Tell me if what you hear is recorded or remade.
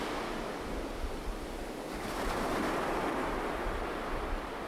recorded